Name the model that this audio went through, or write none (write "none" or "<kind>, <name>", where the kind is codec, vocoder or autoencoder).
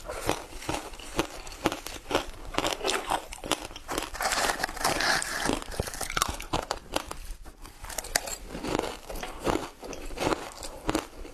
vocoder, BigVGAN v2